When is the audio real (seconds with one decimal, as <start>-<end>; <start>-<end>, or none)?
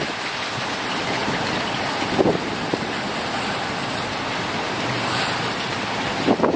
0.0-6.6